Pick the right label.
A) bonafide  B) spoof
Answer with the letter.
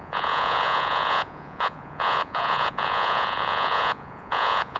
B